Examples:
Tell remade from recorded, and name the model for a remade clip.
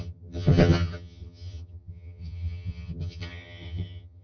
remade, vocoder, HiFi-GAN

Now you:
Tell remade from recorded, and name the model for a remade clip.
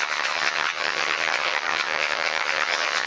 remade, vocoder, HiFi-GAN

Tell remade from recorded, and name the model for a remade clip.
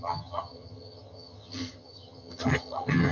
remade, vocoder, HiFi-GAN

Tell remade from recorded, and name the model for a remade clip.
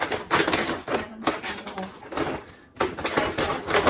recorded